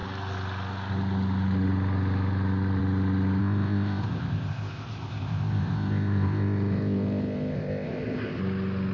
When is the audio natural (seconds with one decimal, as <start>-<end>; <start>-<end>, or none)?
0.0-3.4; 8.4-8.9